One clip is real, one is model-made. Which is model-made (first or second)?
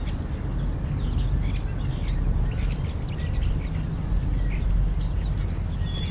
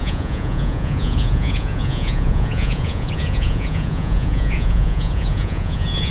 second